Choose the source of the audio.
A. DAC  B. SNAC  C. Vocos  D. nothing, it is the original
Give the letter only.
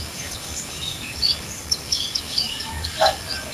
A